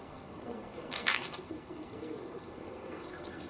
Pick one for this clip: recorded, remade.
remade